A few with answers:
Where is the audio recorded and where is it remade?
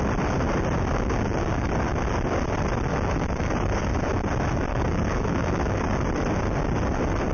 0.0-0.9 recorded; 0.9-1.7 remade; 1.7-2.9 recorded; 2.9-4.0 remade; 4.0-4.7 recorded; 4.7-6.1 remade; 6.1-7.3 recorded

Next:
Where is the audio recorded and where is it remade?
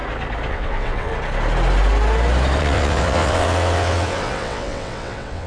0.0-0.5 recorded; 0.5-1.1 remade; 1.1-2.6 recorded; 2.6-5.5 remade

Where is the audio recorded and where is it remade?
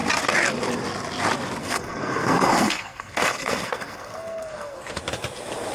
0.0-1.6 recorded; 1.6-5.0 remade; 5.0-5.7 recorded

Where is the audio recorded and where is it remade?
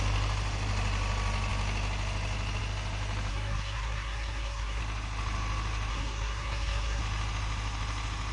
0.0-3.3 recorded; 3.3-4.8 remade; 4.8-5.9 recorded; 5.9-7.0 remade; 7.0-8.3 recorded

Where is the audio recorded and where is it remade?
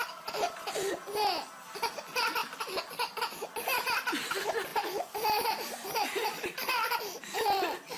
0.0-4.7 recorded; 4.7-8.0 remade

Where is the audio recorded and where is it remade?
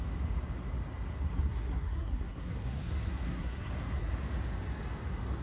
0.0-1.3 recorded; 1.3-4.1 remade; 4.1-5.4 recorded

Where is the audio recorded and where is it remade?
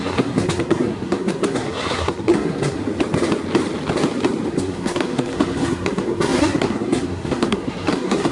0.0-2.8 remade; 2.8-4.5 recorded; 4.5-8.3 remade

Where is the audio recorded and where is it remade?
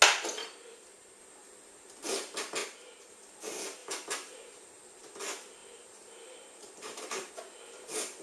0.0-0.4 recorded; 0.4-1.2 remade; 1.2-3.8 recorded; 3.8-4.9 remade; 4.9-5.6 recorded; 5.6-7.3 remade; 7.3-8.2 recorded